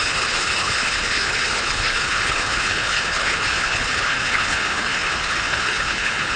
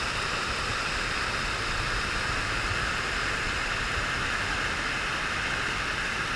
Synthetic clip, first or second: first